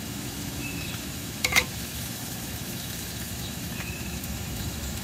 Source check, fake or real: fake